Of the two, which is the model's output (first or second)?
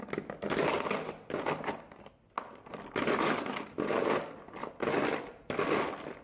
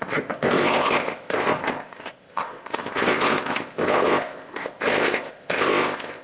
second